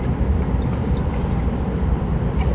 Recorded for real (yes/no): yes